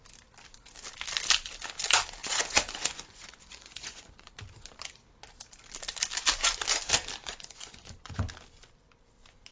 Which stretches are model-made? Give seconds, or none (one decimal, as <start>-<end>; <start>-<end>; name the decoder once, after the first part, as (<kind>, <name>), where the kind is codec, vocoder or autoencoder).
2.2-4.3 (vocoder, Vocos); 7.2-8.2